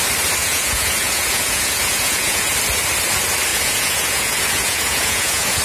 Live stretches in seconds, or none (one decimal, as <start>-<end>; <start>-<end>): 0.0-0.4; 2.5-3.5